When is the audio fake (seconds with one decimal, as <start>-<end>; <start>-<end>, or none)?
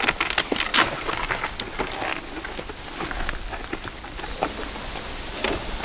none